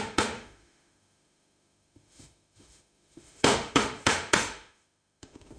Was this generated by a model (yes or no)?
yes